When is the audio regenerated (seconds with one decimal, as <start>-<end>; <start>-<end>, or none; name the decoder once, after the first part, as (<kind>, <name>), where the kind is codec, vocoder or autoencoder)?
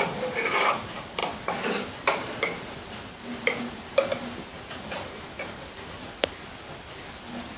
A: none